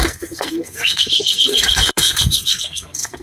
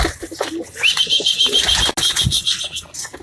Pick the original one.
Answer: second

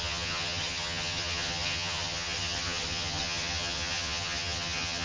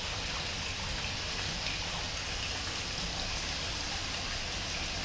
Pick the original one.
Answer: second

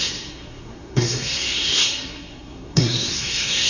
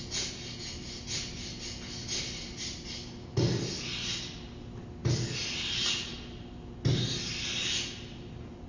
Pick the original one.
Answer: second